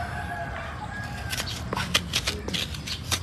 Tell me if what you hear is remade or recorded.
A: recorded